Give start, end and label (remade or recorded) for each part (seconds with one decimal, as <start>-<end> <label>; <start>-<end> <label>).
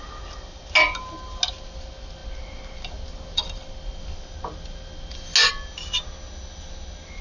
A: 0.0-7.2 recorded